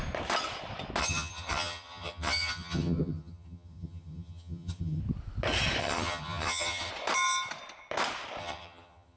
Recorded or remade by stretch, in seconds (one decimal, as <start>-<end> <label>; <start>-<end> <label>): 0.0-1.0 recorded; 1.0-5.0 remade; 5.0-5.8 recorded; 5.8-6.9 remade; 6.9-8.4 recorded; 8.4-9.2 remade